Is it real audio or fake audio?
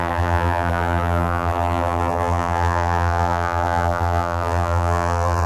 fake